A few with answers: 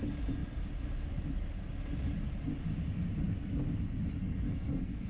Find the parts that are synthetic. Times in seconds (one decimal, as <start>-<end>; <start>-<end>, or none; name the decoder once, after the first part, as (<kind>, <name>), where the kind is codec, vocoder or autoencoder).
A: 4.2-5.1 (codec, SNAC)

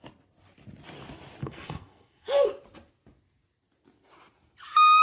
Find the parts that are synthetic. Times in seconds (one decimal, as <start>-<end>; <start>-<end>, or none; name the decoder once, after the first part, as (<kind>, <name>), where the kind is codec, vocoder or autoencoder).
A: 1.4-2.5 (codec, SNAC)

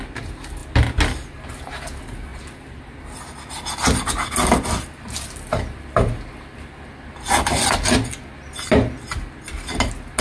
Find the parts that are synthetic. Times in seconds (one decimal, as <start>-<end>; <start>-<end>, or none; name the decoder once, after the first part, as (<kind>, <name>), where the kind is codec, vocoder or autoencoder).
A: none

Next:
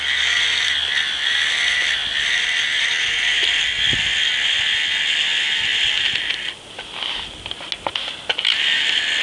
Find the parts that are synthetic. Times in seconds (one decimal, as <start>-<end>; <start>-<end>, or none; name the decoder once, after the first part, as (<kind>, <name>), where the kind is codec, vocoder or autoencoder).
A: none

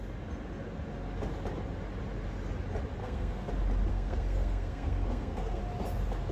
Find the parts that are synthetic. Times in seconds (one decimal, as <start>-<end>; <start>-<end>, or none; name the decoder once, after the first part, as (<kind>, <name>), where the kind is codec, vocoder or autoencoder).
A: 3.0-3.5 (codec, SNAC); 3.9-5.6

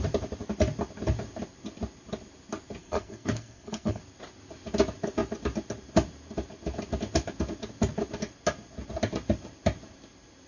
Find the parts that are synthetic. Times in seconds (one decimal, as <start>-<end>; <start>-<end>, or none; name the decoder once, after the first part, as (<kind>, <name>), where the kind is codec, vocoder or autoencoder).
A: 2.8-4.0 (codec, SNAC)